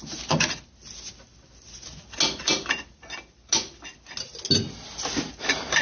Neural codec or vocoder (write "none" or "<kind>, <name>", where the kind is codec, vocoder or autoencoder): none